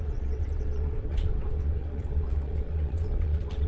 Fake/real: fake